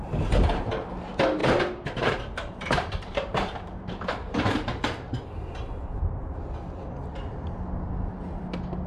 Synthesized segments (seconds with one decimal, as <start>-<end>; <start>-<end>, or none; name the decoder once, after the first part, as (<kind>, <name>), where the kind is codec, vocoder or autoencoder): 1.4-6.6 (vocoder, BigVGAN v2)